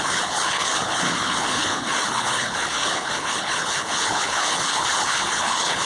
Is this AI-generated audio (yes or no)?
yes